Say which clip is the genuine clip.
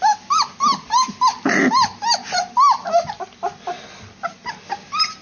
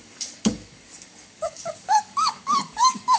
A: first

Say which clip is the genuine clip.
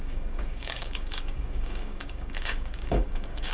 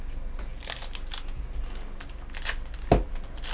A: second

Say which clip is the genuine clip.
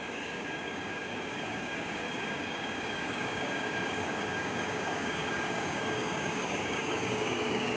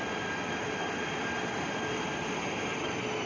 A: second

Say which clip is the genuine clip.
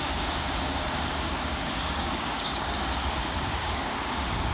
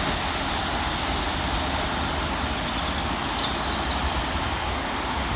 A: second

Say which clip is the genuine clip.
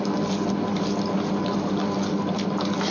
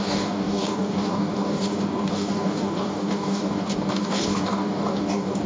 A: first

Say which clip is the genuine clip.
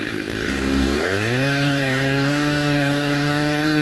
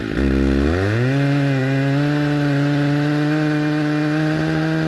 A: second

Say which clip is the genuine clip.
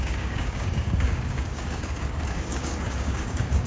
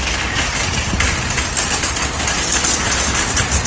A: second